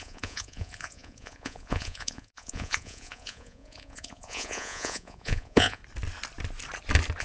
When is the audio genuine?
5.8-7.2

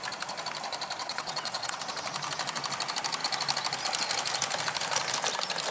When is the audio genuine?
0.0-1.0; 1.8-5.7

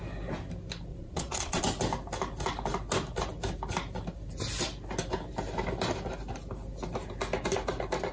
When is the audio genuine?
0.0-0.9; 1.6-8.1

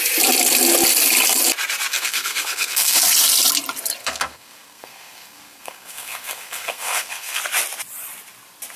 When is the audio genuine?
0.0-1.9; 3.0-4.0; 7.4-8.8

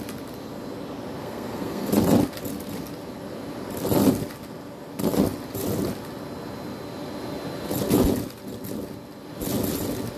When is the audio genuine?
0.0-1.2; 1.9-10.2